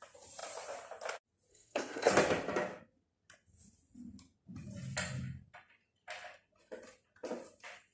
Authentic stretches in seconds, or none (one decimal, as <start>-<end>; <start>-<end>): 0.0-1.5; 2.1-7.9